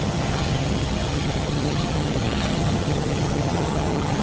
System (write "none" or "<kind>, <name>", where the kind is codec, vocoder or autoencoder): vocoder, HiFi-GAN